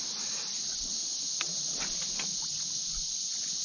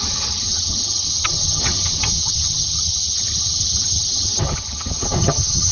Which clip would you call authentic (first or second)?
first